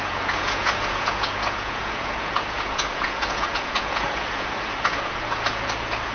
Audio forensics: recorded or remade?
remade